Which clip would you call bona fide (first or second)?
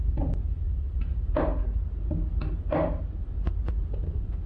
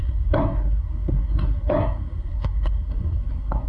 first